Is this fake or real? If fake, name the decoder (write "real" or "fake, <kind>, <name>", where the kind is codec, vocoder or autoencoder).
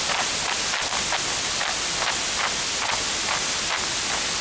real